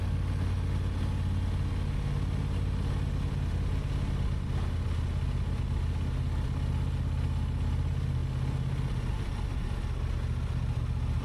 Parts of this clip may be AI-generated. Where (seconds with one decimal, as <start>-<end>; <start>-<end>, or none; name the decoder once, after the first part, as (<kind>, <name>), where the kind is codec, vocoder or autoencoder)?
none